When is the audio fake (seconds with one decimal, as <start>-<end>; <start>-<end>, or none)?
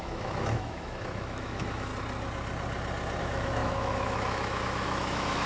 0.0-1.9; 3.2-5.5